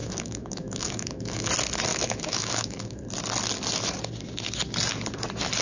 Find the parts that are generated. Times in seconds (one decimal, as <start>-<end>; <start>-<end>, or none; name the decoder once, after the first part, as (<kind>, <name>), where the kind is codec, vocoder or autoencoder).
0.0-1.5 (autoencoder, DAC-VAE); 1.9-3.0